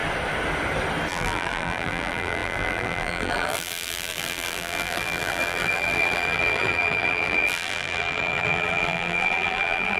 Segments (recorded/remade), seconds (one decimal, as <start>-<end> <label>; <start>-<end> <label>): 0.0-1.1 recorded; 1.1-10.0 remade